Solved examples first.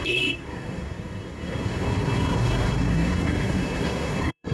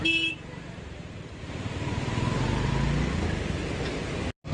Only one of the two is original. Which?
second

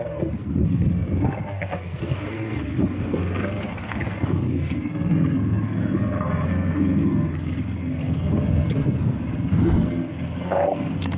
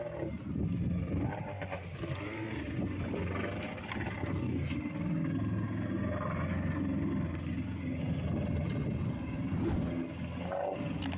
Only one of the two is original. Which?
second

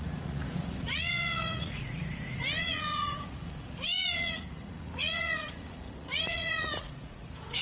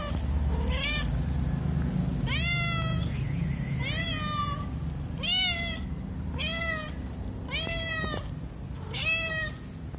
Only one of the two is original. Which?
second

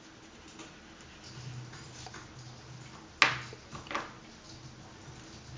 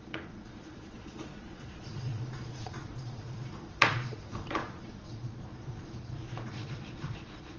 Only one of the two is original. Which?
first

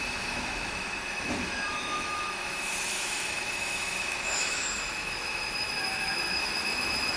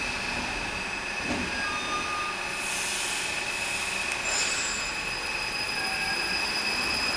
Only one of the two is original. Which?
second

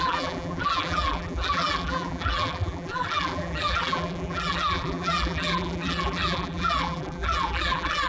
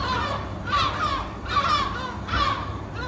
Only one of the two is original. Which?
second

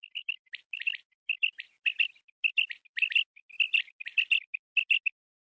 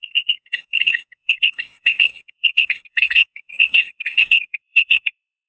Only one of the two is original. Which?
first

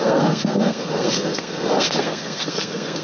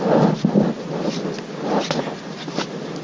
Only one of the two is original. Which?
second